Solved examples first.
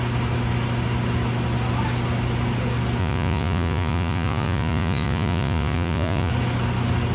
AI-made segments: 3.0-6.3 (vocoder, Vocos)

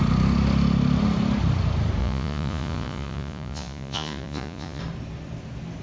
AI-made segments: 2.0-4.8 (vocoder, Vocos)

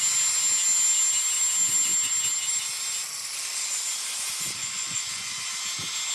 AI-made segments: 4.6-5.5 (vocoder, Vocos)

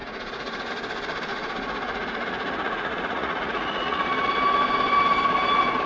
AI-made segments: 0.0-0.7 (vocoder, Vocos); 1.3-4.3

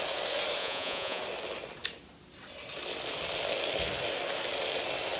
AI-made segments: 0.6-1.2 (vocoder, Vocos)

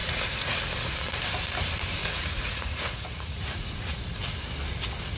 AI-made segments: 0.0-0.6 (vocoder, Vocos); 2.0-4.0

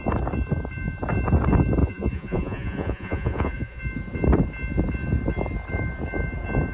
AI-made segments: 1.8-3.8 (vocoder, Vocos)

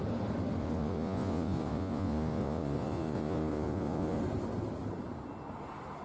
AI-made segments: 0.6-4.2 (vocoder, Vocos)